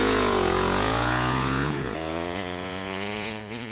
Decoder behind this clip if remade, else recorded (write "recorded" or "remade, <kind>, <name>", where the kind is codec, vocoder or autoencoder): remade, vocoder, Vocos